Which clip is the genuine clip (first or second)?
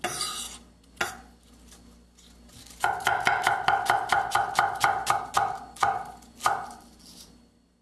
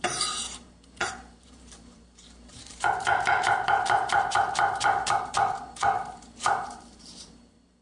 first